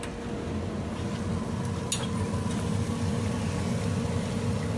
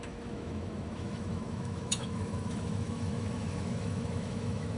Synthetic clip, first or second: second